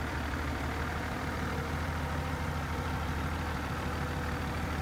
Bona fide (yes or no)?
no